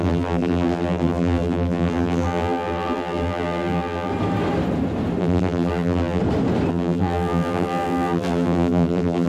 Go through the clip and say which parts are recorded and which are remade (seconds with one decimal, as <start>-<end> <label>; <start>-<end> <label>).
0.0-4.1 remade; 4.1-5.2 recorded; 5.2-6.2 remade; 6.2-6.7 recorded; 6.7-9.3 remade